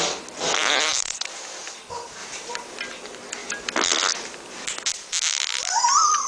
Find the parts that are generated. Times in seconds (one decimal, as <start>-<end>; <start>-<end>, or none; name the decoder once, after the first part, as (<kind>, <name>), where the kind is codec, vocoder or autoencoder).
0.9-1.6 (vocoder, BigVGAN v2); 2.2-2.8